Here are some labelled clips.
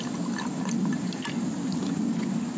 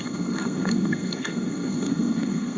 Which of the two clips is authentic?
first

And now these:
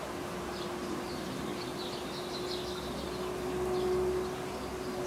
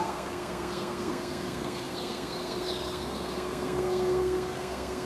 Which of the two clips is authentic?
first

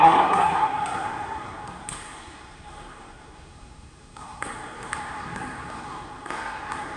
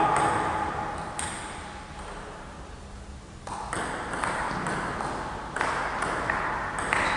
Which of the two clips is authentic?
second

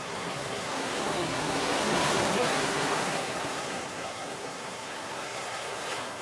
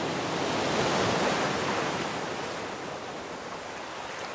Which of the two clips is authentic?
second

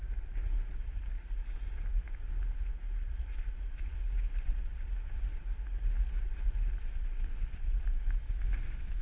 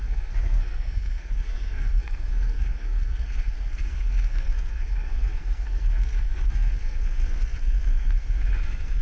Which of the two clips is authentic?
first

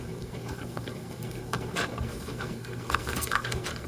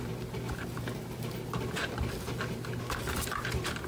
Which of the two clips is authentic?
second